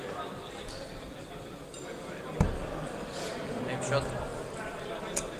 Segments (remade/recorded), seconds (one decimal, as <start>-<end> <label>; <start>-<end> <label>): 0.0-1.8 remade; 1.8-4.3 recorded; 4.3-5.0 remade; 5.0-5.4 recorded